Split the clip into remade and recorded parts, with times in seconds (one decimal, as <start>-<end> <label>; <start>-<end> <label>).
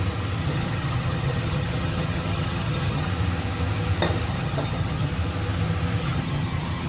0.0-0.4 recorded; 0.4-3.1 remade; 3.1-4.3 recorded; 4.3-5.1 remade; 5.1-6.0 recorded; 6.0-6.9 remade